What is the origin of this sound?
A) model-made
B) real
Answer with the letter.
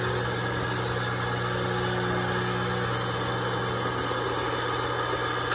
B